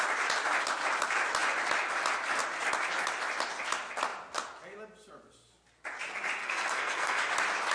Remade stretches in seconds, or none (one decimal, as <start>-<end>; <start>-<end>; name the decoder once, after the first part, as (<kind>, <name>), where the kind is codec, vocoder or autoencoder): 6.4-7.3 (codec, SNAC)

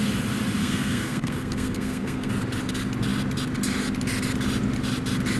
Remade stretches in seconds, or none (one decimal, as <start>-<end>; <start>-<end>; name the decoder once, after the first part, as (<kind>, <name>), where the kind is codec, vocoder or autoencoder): 0.6-2.3 (codec, SNAC)

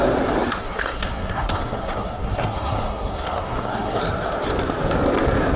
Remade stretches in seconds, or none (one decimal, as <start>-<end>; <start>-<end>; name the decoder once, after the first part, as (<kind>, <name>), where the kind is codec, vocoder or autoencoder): 0.6-4.0 (codec, SNAC)

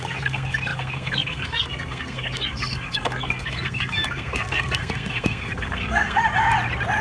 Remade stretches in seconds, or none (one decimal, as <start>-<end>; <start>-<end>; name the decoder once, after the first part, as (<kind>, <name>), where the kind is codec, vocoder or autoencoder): 0.0-6.2 (codec, SNAC)